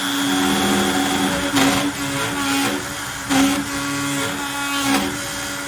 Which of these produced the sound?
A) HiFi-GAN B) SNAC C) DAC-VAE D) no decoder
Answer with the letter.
D